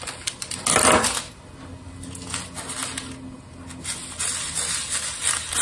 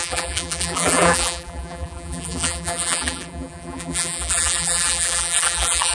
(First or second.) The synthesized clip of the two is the second